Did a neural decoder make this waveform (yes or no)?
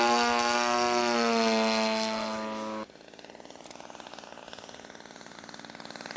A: no